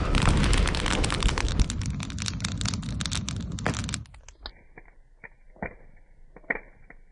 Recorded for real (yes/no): yes